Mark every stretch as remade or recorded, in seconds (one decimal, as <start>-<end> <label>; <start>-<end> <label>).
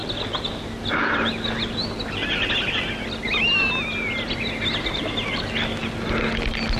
0.0-6.8 recorded